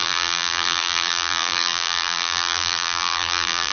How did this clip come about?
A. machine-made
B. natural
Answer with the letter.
A